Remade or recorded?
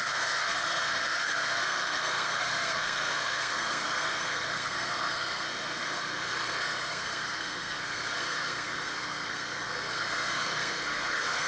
remade